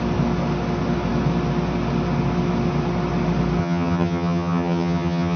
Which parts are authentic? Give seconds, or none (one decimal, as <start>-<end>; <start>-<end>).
0.0-3.6